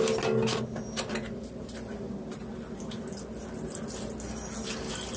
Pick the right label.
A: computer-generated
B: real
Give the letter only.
B